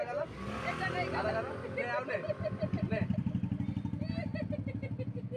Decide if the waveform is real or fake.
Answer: real